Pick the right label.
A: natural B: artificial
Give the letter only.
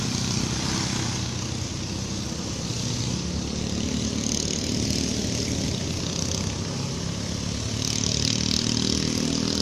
A